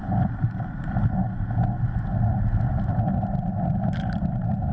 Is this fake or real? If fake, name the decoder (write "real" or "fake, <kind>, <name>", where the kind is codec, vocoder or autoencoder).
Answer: real